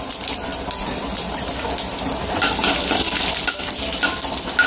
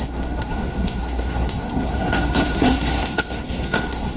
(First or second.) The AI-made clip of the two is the second